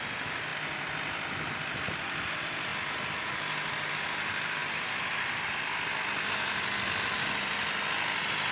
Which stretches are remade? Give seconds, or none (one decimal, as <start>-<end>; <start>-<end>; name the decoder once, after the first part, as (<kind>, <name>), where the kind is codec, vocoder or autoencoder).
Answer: 4.6-5.9 (vocoder, BigVGAN v2)